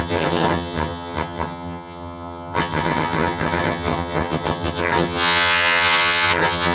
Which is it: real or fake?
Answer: fake